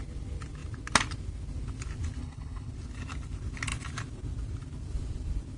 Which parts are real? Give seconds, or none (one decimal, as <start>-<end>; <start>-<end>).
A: 0.0-2.2; 2.7-5.6